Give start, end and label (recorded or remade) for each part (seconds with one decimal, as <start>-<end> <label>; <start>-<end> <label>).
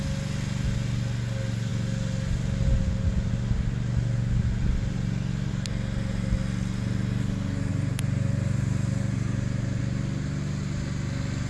0.0-7.7 recorded; 7.7-9.8 remade; 9.8-11.5 recorded